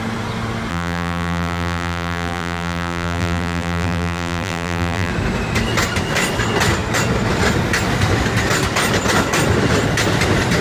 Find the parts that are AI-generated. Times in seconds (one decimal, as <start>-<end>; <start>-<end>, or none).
0.7-5.1